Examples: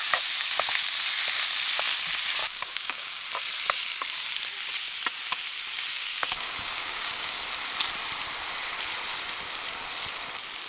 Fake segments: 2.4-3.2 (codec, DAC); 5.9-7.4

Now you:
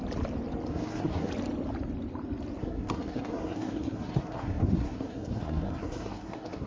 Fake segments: 0.7-1.3 (codec, SNAC); 2.6-6.7

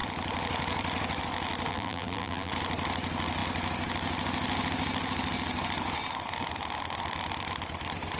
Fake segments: 1.7-2.5 (vocoder, BigVGAN v2)

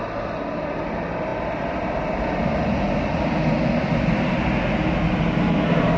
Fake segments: none

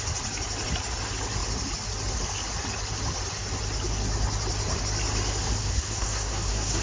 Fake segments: 5.6-6.8 (codec, SNAC)

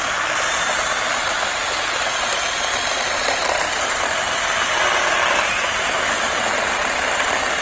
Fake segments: none

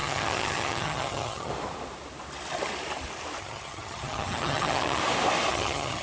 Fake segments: 0.0-1.5 (vocoder, HiFi-GAN); 3.4-5.0; 5.5-6.0